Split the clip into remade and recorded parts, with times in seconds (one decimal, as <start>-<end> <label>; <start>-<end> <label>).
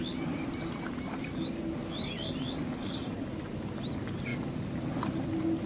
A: 0.0-5.7 recorded